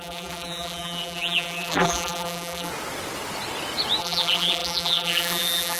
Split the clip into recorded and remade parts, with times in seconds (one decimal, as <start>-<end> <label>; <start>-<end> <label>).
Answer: 0.0-2.7 remade; 2.7-4.0 recorded; 4.0-5.8 remade